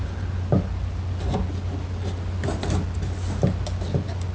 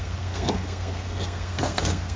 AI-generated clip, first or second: second